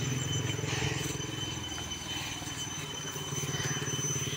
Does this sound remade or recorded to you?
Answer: recorded